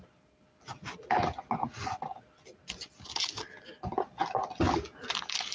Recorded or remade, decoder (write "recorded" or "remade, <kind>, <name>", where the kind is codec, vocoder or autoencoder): recorded